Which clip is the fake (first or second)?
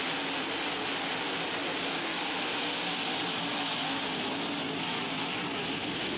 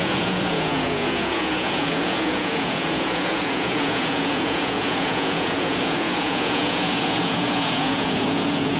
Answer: second